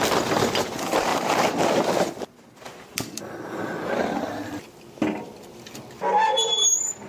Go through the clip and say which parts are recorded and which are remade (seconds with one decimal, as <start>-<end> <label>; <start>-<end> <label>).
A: 0.0-1.1 recorded; 1.1-3.8 remade; 3.8-7.1 recorded

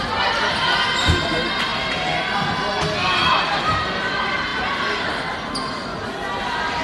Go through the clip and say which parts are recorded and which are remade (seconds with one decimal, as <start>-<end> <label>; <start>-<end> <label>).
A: 0.0-6.8 recorded

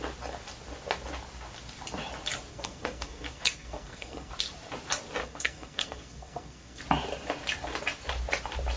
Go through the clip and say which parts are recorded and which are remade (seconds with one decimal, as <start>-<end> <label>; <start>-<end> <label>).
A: 0.0-2.5 recorded; 2.5-4.3 remade; 4.3-5.2 recorded; 5.2-6.8 remade; 6.8-8.8 recorded

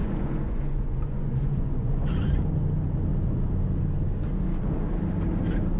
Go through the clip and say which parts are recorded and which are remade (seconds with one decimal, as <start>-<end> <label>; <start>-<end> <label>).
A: 0.0-2.4 remade; 2.4-5.8 recorded

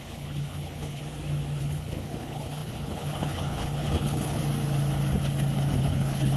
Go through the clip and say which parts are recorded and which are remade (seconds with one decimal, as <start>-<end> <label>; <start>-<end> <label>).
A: 0.0-1.0 remade; 1.0-1.6 recorded; 1.6-4.4 remade; 4.4-5.8 recorded; 5.8-6.4 remade

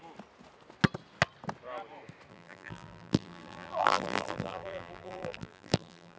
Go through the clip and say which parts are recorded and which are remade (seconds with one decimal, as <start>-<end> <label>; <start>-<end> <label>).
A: 0.0-2.3 recorded; 2.3-6.2 remade

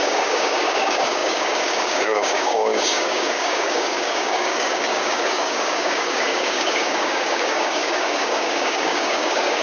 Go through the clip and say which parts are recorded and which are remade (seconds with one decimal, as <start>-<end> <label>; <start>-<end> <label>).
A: 0.0-9.6 remade